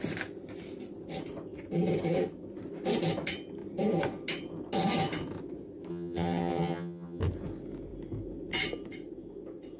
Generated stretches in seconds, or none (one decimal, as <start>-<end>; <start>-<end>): 5.9-7.2